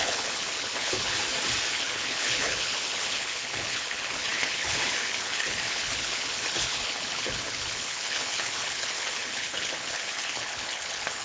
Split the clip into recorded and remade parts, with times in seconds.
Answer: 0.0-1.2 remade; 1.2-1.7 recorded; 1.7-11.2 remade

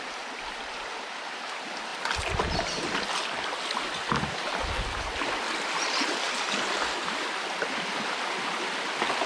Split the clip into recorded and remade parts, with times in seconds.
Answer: 0.0-9.3 recorded

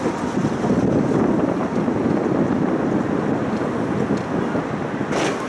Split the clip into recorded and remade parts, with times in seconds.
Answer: 0.0-5.5 recorded

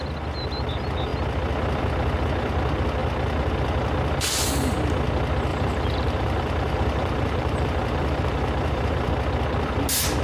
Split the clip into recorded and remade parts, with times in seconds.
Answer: 0.0-5.5 recorded; 5.5-9.1 remade; 9.1-10.2 recorded